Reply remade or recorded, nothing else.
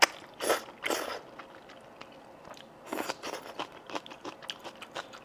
recorded